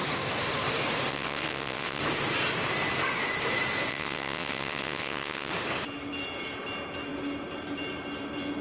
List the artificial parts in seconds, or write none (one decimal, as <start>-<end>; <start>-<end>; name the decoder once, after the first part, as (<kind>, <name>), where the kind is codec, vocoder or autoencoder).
1.1-2.0 (vocoder, WaveNeXt); 3.9-5.5